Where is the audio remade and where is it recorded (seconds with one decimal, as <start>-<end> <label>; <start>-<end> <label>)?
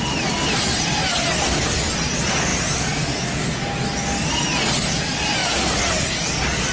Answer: 0.0-0.7 recorded; 0.7-1.9 remade; 1.9-6.7 recorded